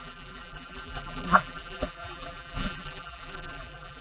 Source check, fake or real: fake